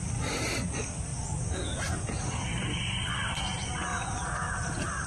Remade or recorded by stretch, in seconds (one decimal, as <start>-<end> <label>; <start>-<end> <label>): 0.0-1.1 recorded; 1.1-2.1 remade; 2.1-3.9 recorded; 3.9-5.1 remade